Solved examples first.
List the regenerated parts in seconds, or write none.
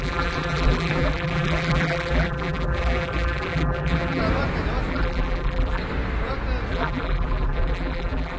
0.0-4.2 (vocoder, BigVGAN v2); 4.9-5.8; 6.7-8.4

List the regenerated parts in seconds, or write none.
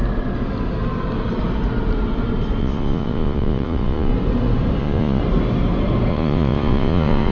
2.6-4.1 (vocoder, Vocos); 4.8-5.2; 6.1-7.3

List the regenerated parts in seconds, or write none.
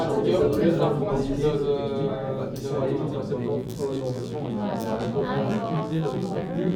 3.4-6.8 (vocoder, BigVGAN v2)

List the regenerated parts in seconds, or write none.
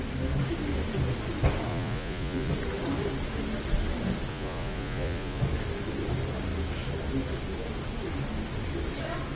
1.7-2.5 (vocoder, Vocos); 4.3-5.4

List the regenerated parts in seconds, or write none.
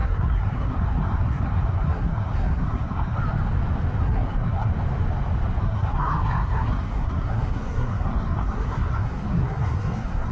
0.0-3.2 (codec, SNAC); 4.0-4.7; 5.6-10.3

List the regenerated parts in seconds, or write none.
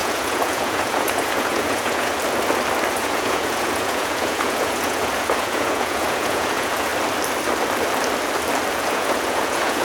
0.0-2.1 (vocoder, Vocos); 2.9-6.9; 8.7-9.8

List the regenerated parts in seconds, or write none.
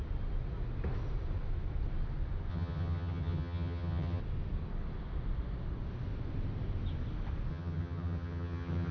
2.5-4.2 (vocoder, HiFi-GAN); 7.5-8.9